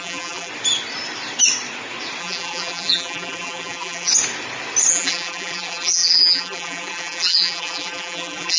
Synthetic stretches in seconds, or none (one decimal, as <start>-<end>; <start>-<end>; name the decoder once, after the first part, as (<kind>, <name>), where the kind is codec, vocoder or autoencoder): 0.0-0.5 (vocoder, BigVGAN v2); 2.2-4.1; 4.9-8.6